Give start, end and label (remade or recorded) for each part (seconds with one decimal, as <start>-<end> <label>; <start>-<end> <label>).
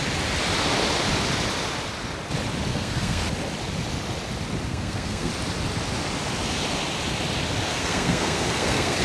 0.0-2.7 recorded; 2.7-3.2 remade; 3.2-4.7 recorded; 4.7-5.3 remade; 5.3-7.7 recorded; 7.7-9.0 remade